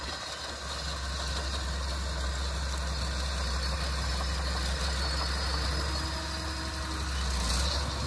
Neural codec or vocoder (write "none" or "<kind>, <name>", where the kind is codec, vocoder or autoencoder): none